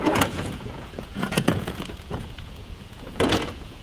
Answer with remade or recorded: remade